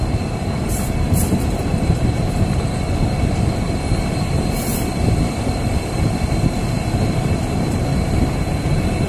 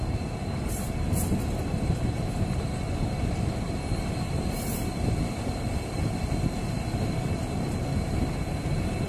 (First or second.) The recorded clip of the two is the second